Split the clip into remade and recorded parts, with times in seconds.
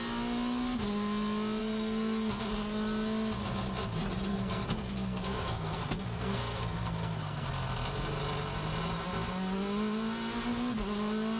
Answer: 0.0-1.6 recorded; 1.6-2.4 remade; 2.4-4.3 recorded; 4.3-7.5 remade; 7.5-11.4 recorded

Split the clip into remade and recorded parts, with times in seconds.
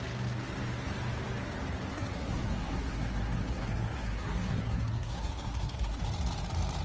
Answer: 0.0-1.9 recorded; 1.9-6.0 remade; 6.0-6.8 recorded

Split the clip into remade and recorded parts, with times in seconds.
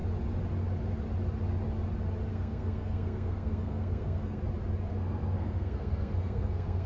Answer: 0.0-2.3 recorded; 2.3-4.4 remade; 4.4-4.9 recorded; 4.9-6.9 remade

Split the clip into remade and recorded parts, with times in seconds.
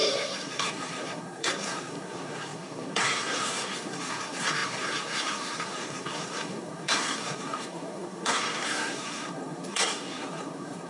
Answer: 0.0-10.9 remade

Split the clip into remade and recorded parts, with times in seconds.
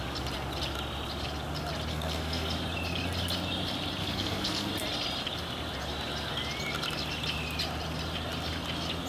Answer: 0.0-1.9 recorded; 1.9-2.5 remade; 2.5-4.0 recorded; 4.0-4.7 remade; 4.7-9.1 recorded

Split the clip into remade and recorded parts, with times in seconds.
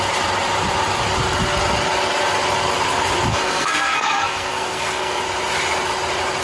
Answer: 0.0-3.3 recorded; 3.3-5.2 remade; 5.2-6.4 recorded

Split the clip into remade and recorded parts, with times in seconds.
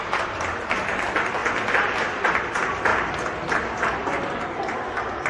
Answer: 0.0-5.3 recorded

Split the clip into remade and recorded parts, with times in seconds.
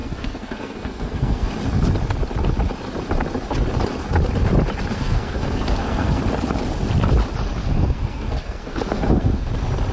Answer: 0.0-1.5 remade; 1.5-4.9 recorded; 4.9-6.2 remade; 6.2-7.6 recorded; 7.6-9.5 remade; 9.5-9.9 recorded